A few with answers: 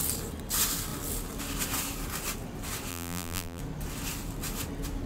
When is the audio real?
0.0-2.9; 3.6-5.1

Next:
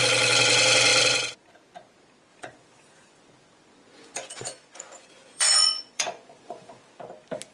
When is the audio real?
0.0-2.3; 6.8-7.5

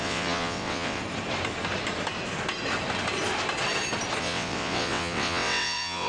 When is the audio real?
1.0-4.2

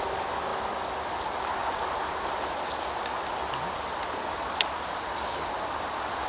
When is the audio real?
0.0-6.3

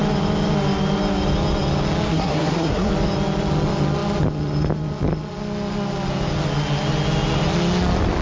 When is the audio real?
0.0-2.1; 2.9-8.2

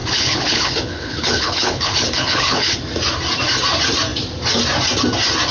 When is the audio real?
2.8-5.5

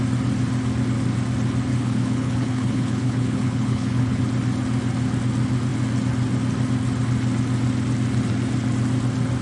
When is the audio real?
0.0-1.7; 4.2-9.4

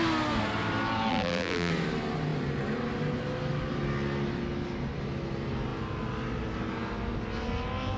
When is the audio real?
0.0-1.1; 1.7-8.0